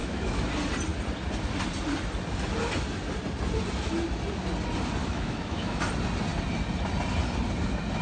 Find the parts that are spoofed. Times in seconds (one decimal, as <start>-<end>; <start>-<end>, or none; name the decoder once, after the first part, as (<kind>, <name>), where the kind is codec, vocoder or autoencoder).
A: 0.0-0.5 (autoencoder, DAC-VAE); 5.0-5.8